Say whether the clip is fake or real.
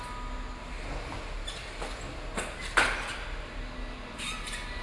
real